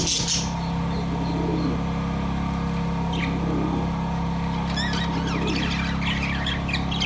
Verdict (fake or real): real